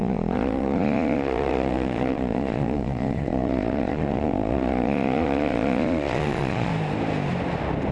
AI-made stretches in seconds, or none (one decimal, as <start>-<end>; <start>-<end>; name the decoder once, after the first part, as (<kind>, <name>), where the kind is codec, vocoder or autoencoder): 0.0-6.7 (vocoder, Vocos)